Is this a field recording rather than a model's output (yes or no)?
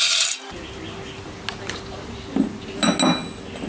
yes